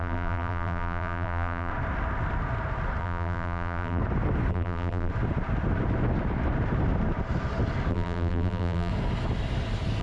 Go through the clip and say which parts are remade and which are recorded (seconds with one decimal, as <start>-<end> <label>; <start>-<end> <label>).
0.0-1.7 remade; 1.7-3.0 recorded; 3.0-4.0 remade; 4.0-4.5 recorded; 4.5-5.1 remade; 5.1-7.9 recorded; 7.9-8.9 remade; 8.9-10.0 recorded